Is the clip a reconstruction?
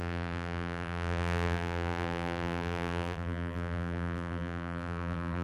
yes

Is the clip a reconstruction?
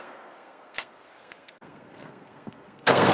yes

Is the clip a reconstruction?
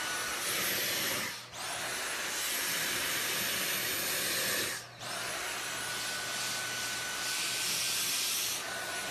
no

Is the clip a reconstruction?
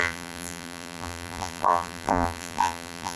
yes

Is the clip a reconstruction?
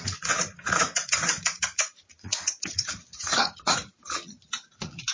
yes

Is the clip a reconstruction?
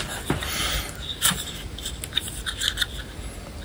no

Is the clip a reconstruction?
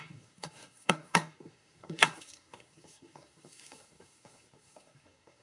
yes